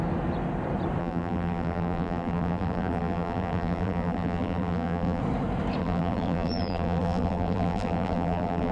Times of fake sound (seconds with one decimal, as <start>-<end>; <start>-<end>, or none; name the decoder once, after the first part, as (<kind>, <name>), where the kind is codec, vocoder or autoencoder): 1.0-5.2 (vocoder, BigVGAN v2); 5.8-8.7